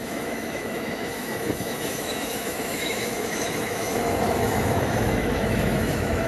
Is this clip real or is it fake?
fake